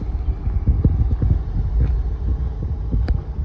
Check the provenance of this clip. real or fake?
real